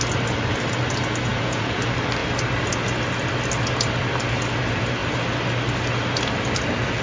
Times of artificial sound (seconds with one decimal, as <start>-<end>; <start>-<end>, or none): 1.3-1.8